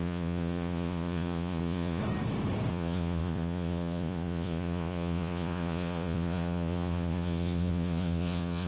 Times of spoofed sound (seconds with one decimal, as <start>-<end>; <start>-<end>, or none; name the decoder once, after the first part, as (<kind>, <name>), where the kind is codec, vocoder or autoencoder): 0.0-2.0 (vocoder, Vocos); 2.7-8.7